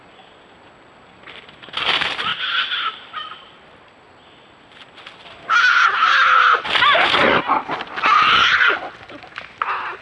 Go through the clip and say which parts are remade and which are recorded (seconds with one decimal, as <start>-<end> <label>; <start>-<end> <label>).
0.0-2.3 recorded; 2.3-4.7 remade; 4.7-7.2 recorded; 7.2-8.5 remade; 8.5-10.0 recorded